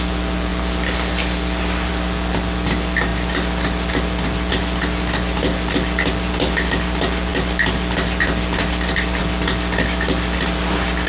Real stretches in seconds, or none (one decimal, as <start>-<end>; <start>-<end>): 0.0-11.1